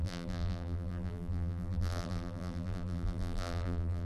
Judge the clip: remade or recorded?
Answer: remade